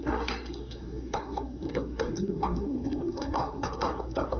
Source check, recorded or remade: remade